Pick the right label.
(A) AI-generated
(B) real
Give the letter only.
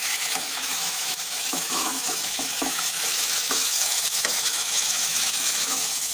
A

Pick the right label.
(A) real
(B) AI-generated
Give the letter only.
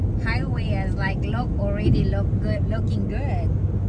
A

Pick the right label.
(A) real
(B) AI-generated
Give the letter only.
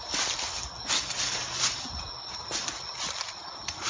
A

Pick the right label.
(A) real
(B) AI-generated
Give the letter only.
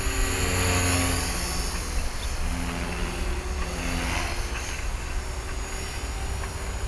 A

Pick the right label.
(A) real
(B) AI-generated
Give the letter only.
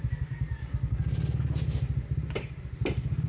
A